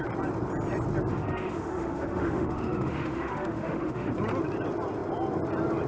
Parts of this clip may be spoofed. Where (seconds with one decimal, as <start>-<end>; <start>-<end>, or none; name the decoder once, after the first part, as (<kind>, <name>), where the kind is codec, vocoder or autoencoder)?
1.1-4.1 (autoencoder, DAC-VAE)